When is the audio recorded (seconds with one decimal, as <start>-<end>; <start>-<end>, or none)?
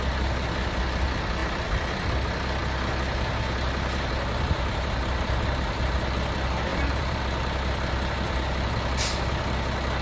0.0-6.7; 7.2-10.0